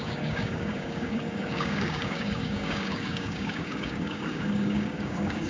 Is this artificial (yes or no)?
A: yes